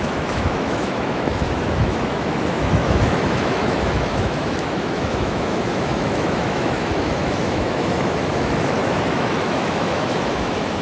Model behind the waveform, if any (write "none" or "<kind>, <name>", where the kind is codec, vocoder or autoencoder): autoencoder, DAC-VAE